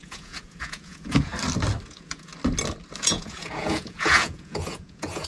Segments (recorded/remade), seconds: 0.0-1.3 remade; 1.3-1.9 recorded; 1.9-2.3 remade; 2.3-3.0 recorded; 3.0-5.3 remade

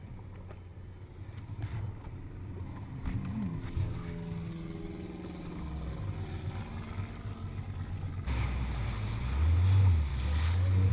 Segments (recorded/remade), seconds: 0.0-10.1 recorded; 10.1-10.9 remade

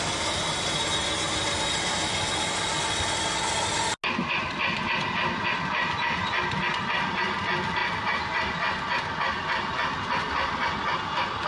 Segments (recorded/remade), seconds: 0.0-11.5 recorded

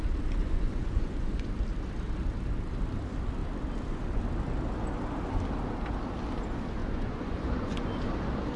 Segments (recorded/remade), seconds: 0.0-0.4 recorded; 0.4-1.5 remade; 1.5-6.8 recorded; 6.8-8.0 remade; 8.0-8.6 recorded

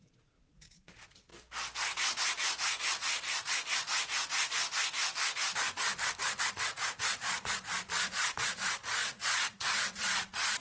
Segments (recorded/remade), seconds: 0.0-1.3 remade; 1.3-6.4 recorded; 6.4-10.6 remade

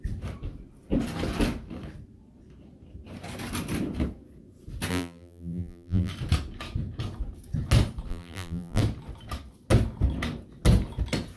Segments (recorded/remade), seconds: 0.0-4.9 recorded; 4.9-6.1 remade; 6.1-8.1 recorded; 8.1-8.8 remade; 8.8-11.4 recorded

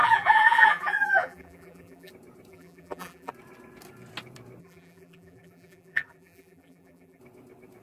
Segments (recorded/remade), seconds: 0.0-2.1 remade; 2.1-2.5 recorded; 2.5-3.3 remade; 3.3-4.6 recorded; 4.6-7.2 remade; 7.2-7.8 recorded